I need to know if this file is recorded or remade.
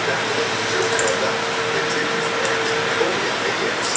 recorded